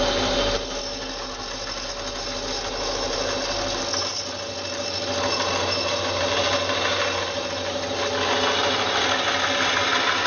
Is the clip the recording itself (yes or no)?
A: yes